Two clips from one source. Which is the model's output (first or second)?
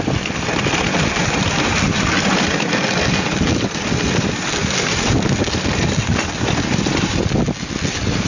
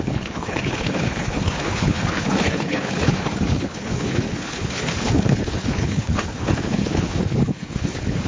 second